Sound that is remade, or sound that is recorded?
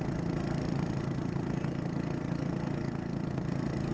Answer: recorded